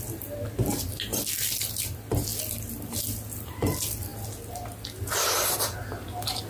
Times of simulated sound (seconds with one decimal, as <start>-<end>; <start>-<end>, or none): none